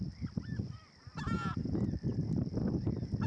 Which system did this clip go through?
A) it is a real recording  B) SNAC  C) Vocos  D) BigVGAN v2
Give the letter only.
D